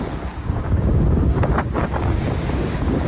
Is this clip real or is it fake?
fake